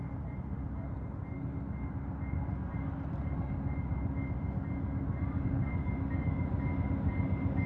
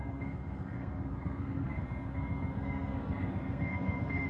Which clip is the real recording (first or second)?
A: first